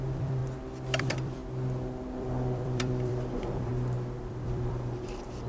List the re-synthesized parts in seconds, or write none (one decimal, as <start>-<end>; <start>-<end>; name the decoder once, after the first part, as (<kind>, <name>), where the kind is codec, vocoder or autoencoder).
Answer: 0.0-0.4 (vocoder, BigVGAN v2); 1.0-1.4; 2.2-3.7; 4.3-5.5